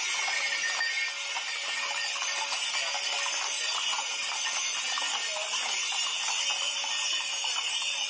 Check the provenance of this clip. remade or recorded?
recorded